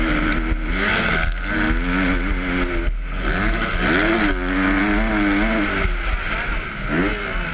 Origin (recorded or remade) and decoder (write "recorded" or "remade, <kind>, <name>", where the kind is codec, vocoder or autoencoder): recorded